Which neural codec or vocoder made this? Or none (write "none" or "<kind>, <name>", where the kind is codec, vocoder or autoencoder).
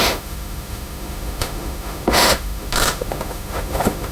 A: autoencoder, DAC-VAE